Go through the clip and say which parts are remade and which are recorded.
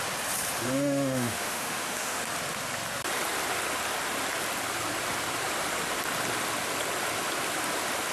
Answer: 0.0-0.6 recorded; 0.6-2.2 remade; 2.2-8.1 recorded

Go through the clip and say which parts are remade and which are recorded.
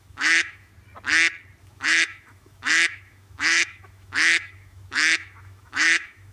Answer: 0.0-0.7 remade; 0.7-1.6 recorded; 1.6-6.3 remade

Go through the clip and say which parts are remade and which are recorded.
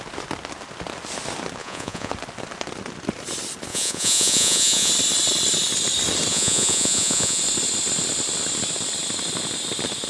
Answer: 0.0-1.6 recorded; 1.6-2.1 remade; 2.1-3.7 recorded; 3.7-4.9 remade; 4.9-6.3 recorded; 6.3-7.4 remade; 7.4-10.1 recorded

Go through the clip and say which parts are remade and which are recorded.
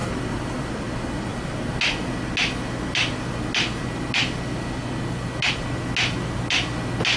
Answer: 0.0-7.2 recorded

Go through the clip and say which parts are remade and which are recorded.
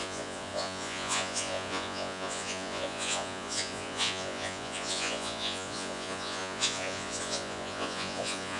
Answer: 0.0-8.6 remade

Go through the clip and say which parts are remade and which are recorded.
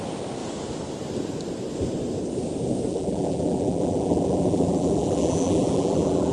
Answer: 0.0-2.9 recorded; 2.9-6.3 remade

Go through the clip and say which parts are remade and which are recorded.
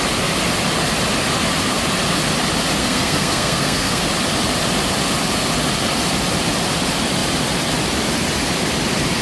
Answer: 0.0-2.8 recorded; 2.8-4.0 remade; 4.0-9.2 recorded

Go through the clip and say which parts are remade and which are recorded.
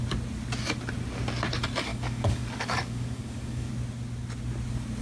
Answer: 0.0-1.9 recorded; 1.9-3.7 remade; 3.7-5.0 recorded